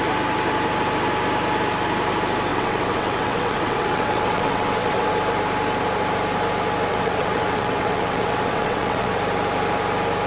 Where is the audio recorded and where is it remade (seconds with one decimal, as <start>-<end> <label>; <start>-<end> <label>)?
0.0-2.5 recorded; 2.5-5.1 remade; 5.1-6.9 recorded; 6.9-9.1 remade; 9.1-10.3 recorded